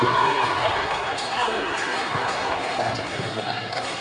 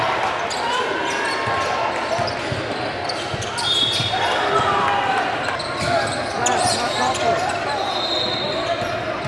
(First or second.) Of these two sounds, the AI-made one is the first